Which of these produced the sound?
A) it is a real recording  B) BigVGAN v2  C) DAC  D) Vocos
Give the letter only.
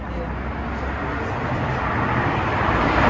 A